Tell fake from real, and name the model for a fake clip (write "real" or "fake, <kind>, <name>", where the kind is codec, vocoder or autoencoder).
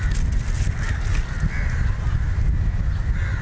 real